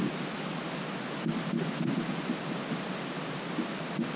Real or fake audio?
real